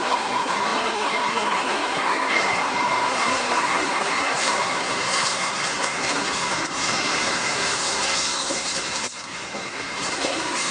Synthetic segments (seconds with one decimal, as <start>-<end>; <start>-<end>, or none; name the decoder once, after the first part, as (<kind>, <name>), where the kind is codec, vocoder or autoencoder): 0.0-10.7 (codec, SNAC)